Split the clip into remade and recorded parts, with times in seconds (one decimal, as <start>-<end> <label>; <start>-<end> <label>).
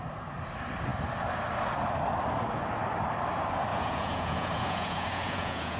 0.0-3.7 recorded; 3.7-5.8 remade